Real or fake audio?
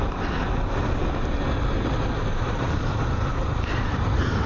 fake